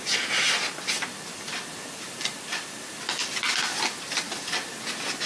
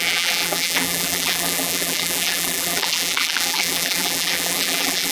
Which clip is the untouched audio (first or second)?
first